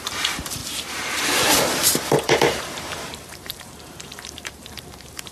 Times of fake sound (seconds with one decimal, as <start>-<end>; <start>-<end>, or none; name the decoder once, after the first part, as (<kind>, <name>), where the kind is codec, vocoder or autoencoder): 0.0-0.6 (vocoder, BigVGAN v2); 2.1-5.3